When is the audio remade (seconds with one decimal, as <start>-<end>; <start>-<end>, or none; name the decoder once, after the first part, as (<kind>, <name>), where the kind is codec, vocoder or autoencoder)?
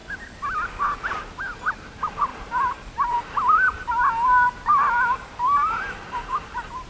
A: 1.9-6.9 (vocoder, BigVGAN v2)